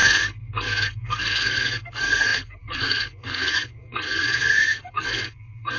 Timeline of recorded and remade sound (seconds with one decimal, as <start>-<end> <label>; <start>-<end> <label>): 0.0-5.8 remade